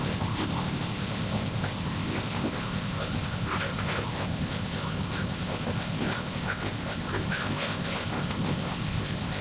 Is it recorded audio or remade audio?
remade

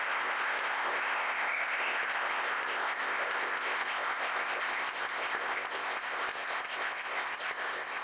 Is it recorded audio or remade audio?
remade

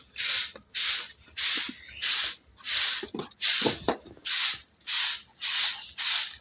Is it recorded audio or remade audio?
recorded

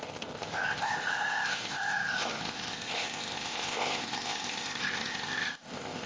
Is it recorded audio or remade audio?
remade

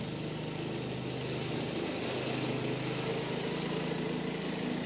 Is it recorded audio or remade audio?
recorded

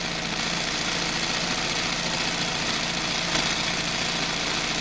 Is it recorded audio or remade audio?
recorded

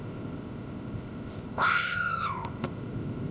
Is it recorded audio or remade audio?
remade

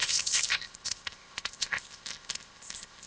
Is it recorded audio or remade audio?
remade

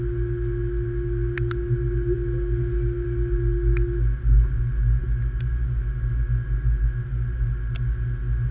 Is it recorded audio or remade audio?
recorded